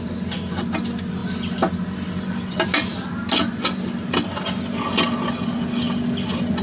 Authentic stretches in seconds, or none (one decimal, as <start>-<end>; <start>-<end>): 0.0-6.6